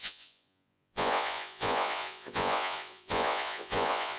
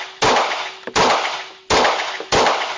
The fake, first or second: first